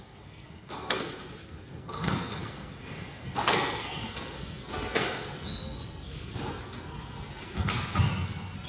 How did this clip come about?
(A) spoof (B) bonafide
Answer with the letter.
A